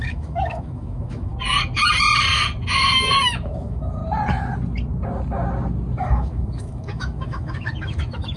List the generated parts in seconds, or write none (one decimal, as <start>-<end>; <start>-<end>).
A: 0.0-1.3; 3.2-4.0; 6.0-8.4